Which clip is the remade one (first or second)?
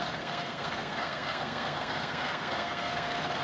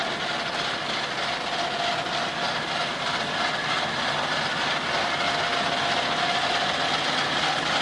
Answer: first